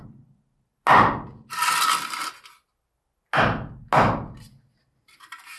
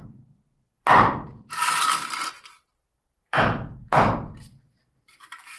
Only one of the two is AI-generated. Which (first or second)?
second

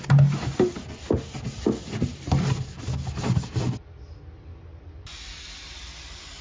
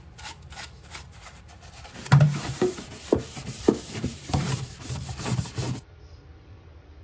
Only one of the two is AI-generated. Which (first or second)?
second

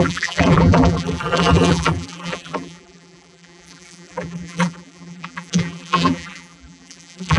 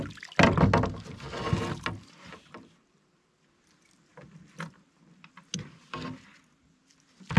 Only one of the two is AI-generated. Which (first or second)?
first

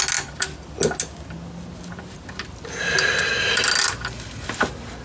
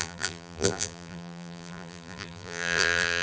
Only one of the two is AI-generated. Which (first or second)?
second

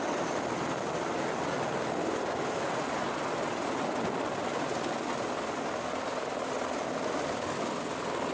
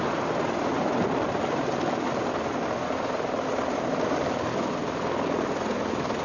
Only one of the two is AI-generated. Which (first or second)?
second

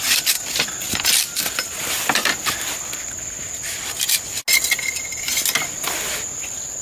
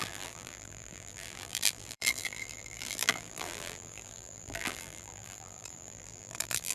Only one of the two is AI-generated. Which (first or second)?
second